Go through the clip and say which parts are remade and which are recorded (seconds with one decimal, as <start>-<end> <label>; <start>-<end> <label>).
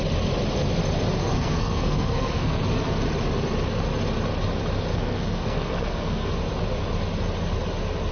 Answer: 0.0-1.2 recorded; 1.2-2.6 remade; 2.6-4.9 recorded; 4.9-6.3 remade; 6.3-8.1 recorded